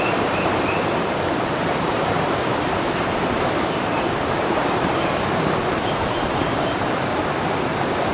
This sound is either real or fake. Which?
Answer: fake